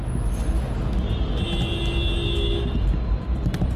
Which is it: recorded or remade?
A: recorded